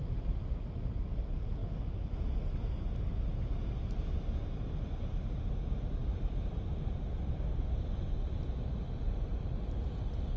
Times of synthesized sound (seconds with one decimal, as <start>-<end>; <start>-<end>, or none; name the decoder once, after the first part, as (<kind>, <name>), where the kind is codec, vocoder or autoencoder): 6.0-8.7 (vocoder, BigVGAN v2)